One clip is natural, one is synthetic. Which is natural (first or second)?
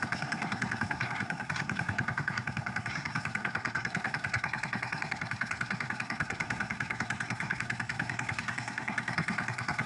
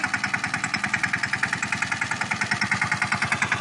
second